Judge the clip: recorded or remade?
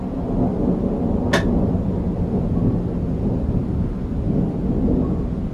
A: recorded